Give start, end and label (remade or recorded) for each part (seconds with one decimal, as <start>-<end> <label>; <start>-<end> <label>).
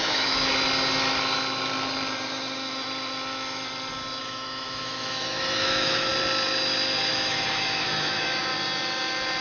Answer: 0.0-0.5 remade; 0.5-4.2 recorded; 4.2-6.1 remade; 6.1-7.1 recorded; 7.1-8.5 remade; 8.5-9.4 recorded